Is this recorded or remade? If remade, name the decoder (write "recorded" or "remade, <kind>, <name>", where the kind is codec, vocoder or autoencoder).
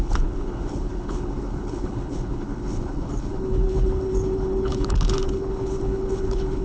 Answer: remade, codec, HILCodec